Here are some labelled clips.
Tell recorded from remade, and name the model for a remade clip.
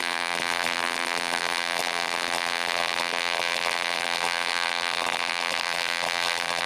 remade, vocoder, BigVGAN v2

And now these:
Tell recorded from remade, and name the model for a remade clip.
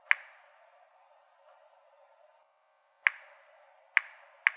recorded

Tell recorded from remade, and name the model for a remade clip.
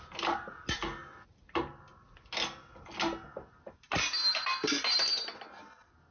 recorded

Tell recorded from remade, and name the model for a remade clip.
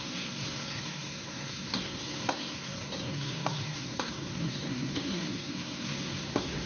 remade, codec, SNAC